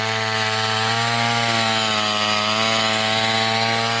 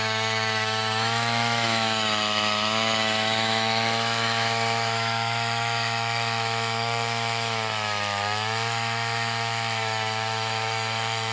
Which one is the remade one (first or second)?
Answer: second